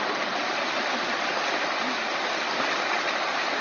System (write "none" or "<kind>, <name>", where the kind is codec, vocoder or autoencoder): none